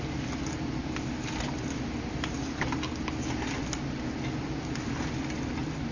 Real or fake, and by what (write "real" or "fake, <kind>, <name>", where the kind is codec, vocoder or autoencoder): real